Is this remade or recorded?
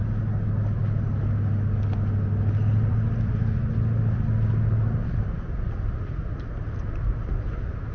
recorded